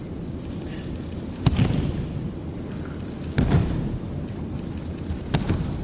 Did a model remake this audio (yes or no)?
no